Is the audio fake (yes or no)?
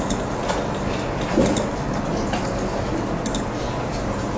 no